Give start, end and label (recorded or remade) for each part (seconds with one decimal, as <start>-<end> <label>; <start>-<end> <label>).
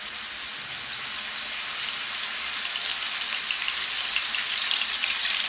0.0-0.5 remade; 0.5-3.3 recorded; 3.3-4.6 remade; 4.6-5.5 recorded